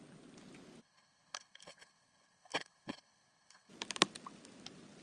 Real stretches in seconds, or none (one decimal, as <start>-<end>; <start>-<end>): 0.0-0.8; 3.7-5.0